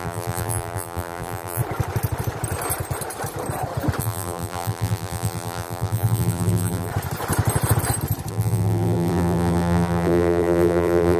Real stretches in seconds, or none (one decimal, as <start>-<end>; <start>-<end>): 1.6-4.0; 6.9-8.3